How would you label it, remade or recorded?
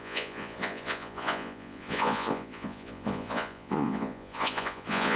remade